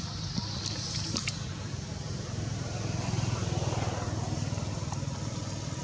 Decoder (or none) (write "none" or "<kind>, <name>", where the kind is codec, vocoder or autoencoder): none